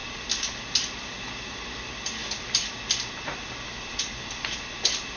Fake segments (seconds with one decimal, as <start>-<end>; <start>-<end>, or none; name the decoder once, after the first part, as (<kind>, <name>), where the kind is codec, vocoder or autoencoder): none